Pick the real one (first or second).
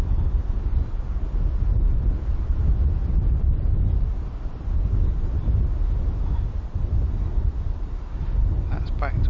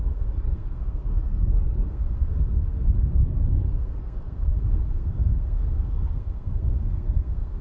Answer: first